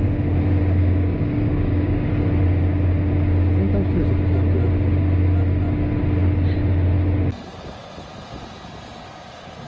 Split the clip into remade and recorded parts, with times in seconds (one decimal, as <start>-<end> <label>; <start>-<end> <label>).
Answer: 0.0-0.8 recorded; 0.8-2.1 remade; 2.1-9.7 recorded